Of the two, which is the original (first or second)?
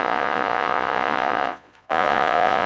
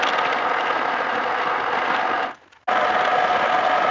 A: second